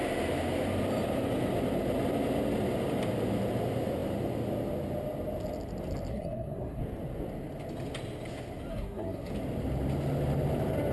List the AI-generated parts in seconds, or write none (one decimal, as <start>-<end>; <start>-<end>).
6.1-6.8; 8.7-9.3